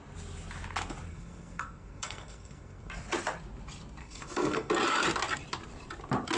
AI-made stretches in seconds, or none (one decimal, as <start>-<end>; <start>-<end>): 1.1-2.9; 4.0-4.7